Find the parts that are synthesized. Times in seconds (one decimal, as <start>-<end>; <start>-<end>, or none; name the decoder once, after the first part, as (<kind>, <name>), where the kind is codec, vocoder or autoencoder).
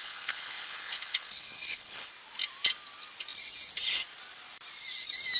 0.0-2.1 (codec, HILCodec)